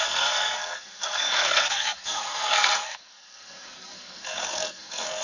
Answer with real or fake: fake